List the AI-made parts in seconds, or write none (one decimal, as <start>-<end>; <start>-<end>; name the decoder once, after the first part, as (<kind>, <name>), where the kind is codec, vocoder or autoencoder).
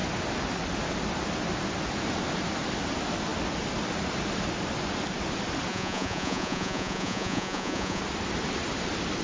5.7-8.0 (vocoder, Vocos)